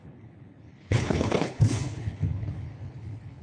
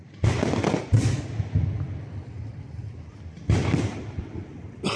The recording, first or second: second